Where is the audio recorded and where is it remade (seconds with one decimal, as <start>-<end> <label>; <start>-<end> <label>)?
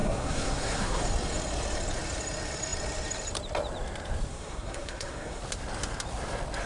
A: 0.0-1.0 remade; 1.0-4.3 recorded; 4.3-5.4 remade; 5.4-6.7 recorded